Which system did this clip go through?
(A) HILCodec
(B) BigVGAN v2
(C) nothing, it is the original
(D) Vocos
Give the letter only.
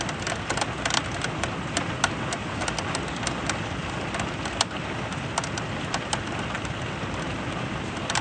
C